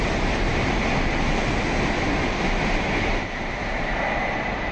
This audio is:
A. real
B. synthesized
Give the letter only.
A